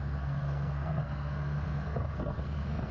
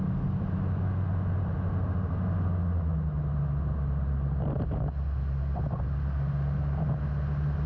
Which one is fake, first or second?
first